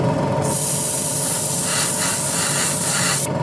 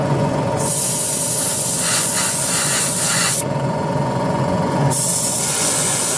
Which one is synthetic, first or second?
second